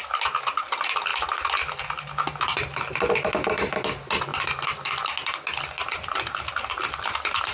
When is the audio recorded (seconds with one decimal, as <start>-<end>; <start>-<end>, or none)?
0.0-7.5